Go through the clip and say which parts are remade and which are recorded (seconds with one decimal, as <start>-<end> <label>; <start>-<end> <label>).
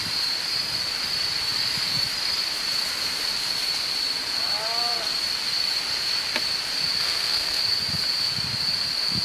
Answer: 0.0-7.0 recorded; 7.0-7.6 remade; 7.6-9.2 recorded